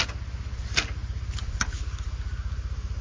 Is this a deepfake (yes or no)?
no